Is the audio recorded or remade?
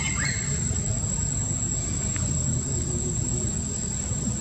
recorded